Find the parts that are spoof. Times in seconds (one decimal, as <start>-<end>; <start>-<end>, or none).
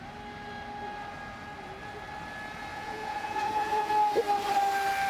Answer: 2.7-3.9